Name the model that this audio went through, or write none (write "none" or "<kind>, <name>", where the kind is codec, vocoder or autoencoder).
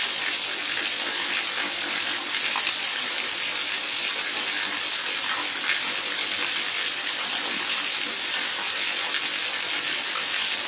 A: none